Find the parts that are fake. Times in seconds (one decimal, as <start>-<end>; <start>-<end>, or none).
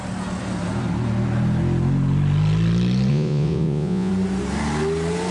3.1-4.1